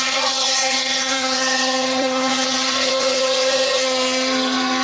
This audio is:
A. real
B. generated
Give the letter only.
B